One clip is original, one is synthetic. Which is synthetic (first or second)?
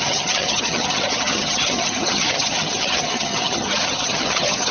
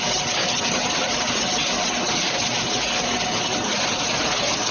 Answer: first